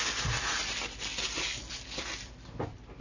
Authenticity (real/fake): real